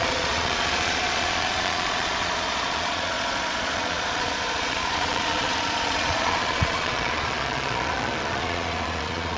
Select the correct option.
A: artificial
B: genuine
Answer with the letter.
A